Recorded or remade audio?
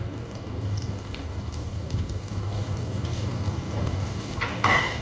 remade